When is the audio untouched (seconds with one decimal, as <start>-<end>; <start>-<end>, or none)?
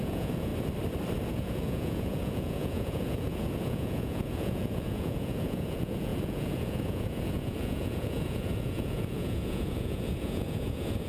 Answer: 0.5-1.3